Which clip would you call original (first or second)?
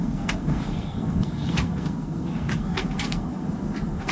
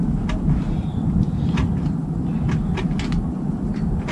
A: second